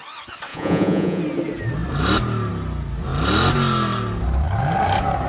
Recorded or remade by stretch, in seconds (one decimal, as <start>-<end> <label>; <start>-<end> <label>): 0.0-0.5 recorded; 0.5-1.2 remade; 1.2-5.3 recorded